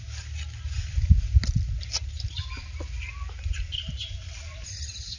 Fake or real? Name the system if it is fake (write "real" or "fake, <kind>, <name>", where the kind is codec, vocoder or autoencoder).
real